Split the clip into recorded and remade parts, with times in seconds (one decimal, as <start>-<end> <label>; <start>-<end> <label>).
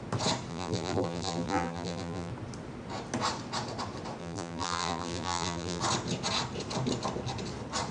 0.0-0.5 recorded; 0.5-2.3 remade; 2.3-4.2 recorded; 4.2-5.8 remade; 5.8-7.9 recorded